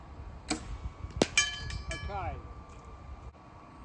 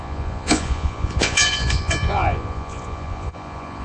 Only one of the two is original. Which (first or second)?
first